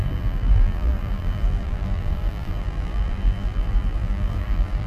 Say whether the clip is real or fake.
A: fake